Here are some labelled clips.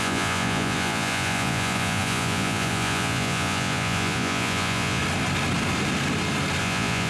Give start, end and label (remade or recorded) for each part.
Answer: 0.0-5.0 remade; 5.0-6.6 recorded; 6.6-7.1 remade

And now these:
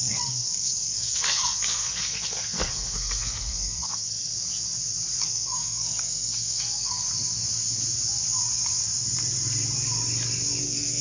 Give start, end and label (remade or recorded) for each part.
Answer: 0.0-4.3 remade; 4.3-5.2 recorded; 5.2-7.1 remade; 7.1-10.6 recorded; 10.6-11.0 remade

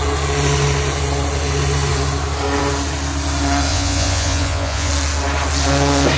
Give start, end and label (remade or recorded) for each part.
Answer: 0.0-3.7 recorded; 3.7-4.9 remade; 4.9-6.2 recorded

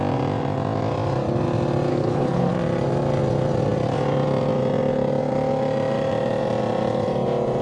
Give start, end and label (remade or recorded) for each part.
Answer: 0.0-1.9 recorded; 1.9-2.5 remade; 2.5-7.6 recorded

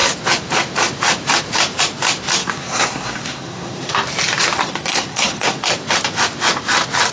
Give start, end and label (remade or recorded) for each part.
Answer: 0.0-2.4 recorded; 2.4-3.9 remade; 3.9-4.9 recorded; 4.9-5.6 remade; 5.6-7.1 recorded

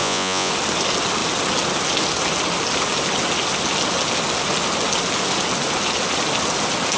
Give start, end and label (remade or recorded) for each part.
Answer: 0.0-0.5 remade; 0.5-7.0 recorded

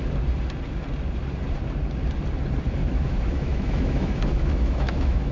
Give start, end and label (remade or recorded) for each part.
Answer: 0.0-2.8 recorded; 2.8-5.3 remade